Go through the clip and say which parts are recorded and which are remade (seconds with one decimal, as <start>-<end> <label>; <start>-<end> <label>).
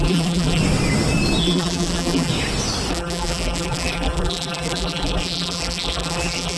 0.0-0.6 remade; 0.6-1.4 recorded; 1.4-2.3 remade; 2.3-2.9 recorded; 2.9-6.6 remade